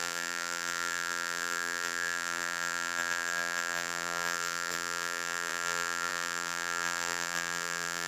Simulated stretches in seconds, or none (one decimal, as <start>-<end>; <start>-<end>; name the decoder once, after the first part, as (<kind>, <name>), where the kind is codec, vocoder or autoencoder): 0.0-8.1 (vocoder, BigVGAN v2)